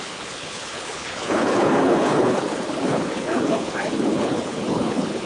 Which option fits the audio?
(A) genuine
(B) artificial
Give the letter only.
B